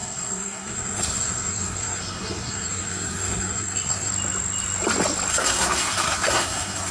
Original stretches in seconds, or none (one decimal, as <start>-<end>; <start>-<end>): 4.1-5.3